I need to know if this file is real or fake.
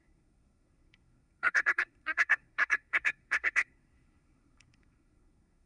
fake